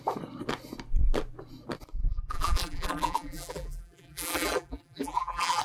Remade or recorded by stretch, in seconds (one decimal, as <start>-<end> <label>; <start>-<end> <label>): 0.0-2.0 recorded; 2.0-5.6 remade